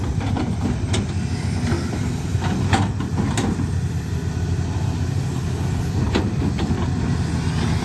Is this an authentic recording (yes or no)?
yes